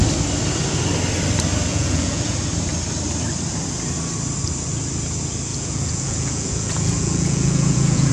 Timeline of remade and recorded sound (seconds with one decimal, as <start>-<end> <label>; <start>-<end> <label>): 0.0-1.7 recorded; 1.7-2.2 remade; 2.2-5.5 recorded; 5.5-8.1 remade